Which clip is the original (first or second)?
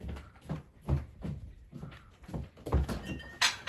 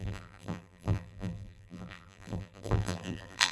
first